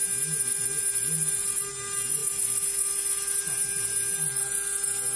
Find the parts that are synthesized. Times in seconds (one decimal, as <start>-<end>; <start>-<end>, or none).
none